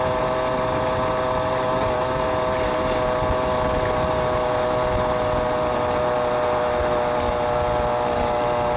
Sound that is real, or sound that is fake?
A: real